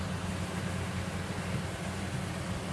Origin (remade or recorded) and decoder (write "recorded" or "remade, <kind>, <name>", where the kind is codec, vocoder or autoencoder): recorded